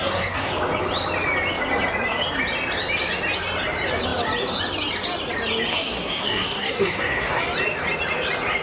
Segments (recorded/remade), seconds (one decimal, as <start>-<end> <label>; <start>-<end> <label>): 0.0-0.5 remade; 0.5-5.7 recorded; 5.7-7.4 remade; 7.4-8.6 recorded